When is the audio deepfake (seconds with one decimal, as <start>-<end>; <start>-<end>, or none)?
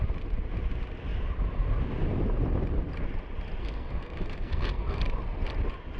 3.6-5.0